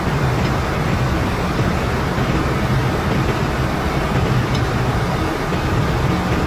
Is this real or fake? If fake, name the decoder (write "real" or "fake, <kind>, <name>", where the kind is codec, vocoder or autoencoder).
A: real